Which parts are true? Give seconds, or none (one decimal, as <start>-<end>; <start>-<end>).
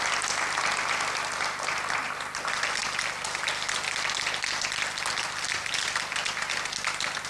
0.0-7.3